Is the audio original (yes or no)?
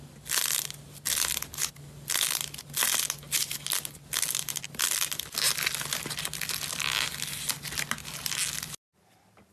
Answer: yes